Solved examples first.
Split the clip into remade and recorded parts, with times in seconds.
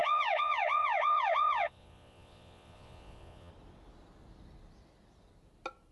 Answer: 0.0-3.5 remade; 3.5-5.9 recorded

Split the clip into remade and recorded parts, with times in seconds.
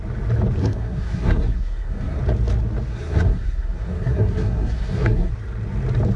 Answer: 0.0-0.6 recorded; 0.6-2.2 remade; 2.2-2.9 recorded; 2.9-5.3 remade; 5.3-6.2 recorded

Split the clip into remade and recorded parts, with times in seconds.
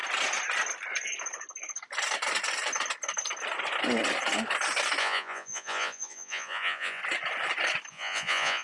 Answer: 0.0-5.0 recorded; 5.0-7.0 remade; 7.0-7.9 recorded; 7.9-8.6 remade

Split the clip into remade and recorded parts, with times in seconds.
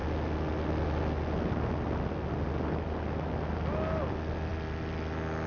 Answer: 0.0-5.5 recorded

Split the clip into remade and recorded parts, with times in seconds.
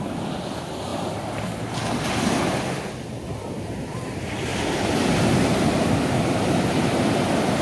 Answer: 0.0-7.6 recorded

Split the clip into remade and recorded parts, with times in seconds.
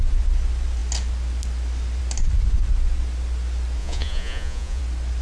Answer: 0.0-3.8 recorded; 3.8-4.8 remade; 4.8-5.2 recorded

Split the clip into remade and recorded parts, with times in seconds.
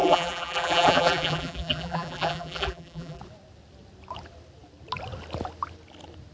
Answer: 0.0-3.2 remade; 3.2-6.3 recorded